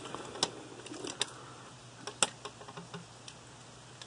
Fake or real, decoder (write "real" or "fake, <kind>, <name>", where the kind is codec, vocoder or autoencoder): real